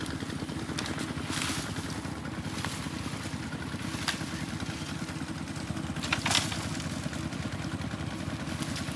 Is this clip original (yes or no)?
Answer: yes